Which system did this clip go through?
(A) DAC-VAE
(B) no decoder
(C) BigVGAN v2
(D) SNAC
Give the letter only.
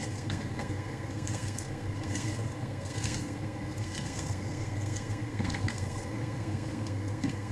D